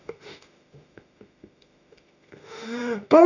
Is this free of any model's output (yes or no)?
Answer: no